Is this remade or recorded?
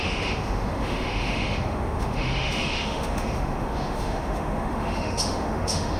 remade